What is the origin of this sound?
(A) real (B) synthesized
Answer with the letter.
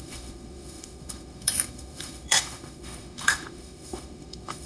B